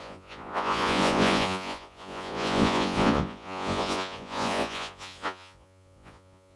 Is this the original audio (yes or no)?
no